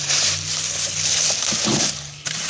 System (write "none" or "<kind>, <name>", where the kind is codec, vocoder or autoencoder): none